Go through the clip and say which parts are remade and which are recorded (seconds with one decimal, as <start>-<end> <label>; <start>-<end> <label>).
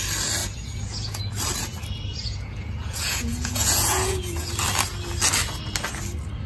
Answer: 0.0-0.4 recorded; 0.4-1.3 remade; 1.3-2.1 recorded; 2.1-4.5 remade; 4.5-6.5 recorded